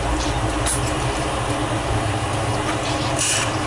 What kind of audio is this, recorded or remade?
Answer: remade